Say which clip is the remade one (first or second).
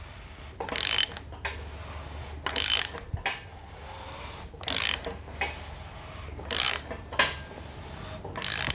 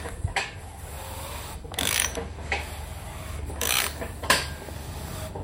second